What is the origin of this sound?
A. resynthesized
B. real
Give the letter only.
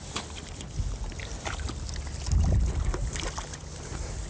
B